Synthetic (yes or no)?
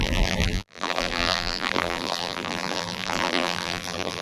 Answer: yes